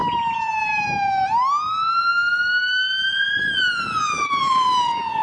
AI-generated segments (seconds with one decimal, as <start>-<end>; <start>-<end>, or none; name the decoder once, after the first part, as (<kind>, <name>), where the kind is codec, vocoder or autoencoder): 3.1-5.2 (vocoder, Vocos)